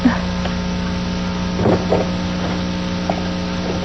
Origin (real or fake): real